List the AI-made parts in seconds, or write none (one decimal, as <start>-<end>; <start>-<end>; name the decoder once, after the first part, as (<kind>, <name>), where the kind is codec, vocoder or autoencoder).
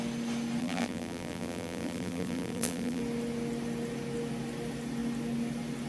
0.6-3.0 (vocoder, BigVGAN v2)